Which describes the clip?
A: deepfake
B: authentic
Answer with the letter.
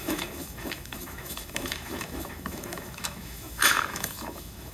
A